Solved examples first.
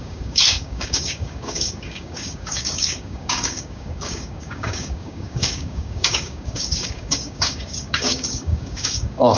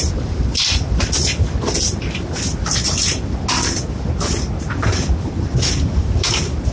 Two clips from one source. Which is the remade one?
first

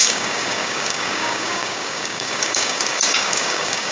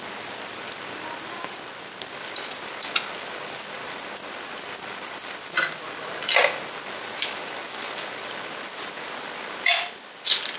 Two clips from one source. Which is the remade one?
first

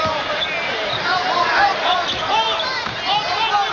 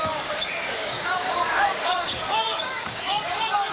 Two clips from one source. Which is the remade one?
second